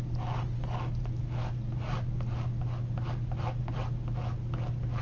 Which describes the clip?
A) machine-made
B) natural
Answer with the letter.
B